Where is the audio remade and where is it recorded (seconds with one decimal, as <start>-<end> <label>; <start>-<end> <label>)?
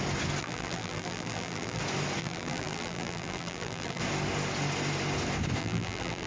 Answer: 0.0-0.4 recorded; 0.4-1.8 remade; 1.8-2.2 recorded; 2.2-4.0 remade; 4.0-5.6 recorded; 5.6-6.3 remade